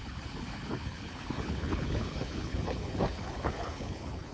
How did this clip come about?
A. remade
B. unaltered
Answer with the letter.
A